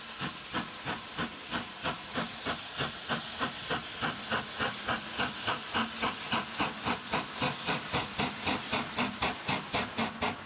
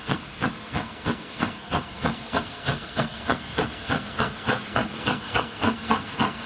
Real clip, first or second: first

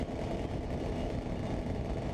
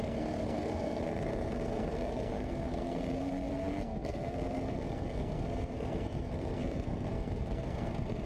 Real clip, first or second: first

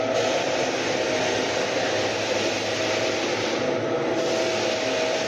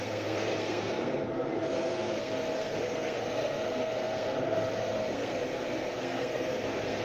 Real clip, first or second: first